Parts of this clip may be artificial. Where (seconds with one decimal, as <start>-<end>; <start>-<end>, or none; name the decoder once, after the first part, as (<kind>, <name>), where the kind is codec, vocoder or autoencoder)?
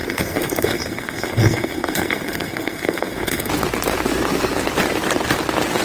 0.0-3.5 (codec, SNAC)